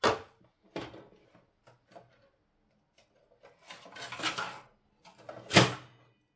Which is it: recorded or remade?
recorded